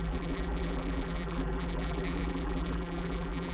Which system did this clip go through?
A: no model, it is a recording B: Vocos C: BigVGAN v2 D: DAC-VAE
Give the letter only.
C